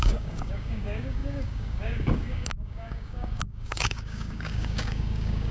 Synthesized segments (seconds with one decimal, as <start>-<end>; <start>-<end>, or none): 0.0-5.5